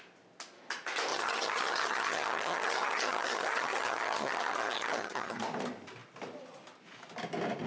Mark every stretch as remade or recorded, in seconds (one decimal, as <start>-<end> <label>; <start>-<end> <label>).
0.0-1.1 recorded; 1.1-5.4 remade; 5.4-7.7 recorded